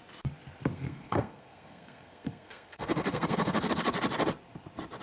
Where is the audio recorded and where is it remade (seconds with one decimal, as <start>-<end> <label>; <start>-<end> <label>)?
0.0-0.7 recorded; 0.7-3.7 remade; 3.7-5.0 recorded